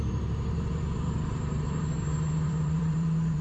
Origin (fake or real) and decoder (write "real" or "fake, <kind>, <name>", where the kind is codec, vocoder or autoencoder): fake, vocoder, BigVGAN v2